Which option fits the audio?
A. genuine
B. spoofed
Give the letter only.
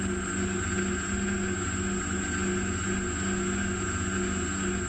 A